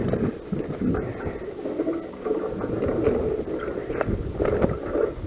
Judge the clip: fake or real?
real